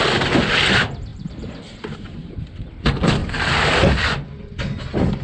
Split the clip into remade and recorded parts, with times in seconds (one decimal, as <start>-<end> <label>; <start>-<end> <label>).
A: 0.0-1.1 recorded; 1.1-2.4 remade; 2.4-3.2 recorded; 3.2-4.0 remade; 4.0-5.2 recorded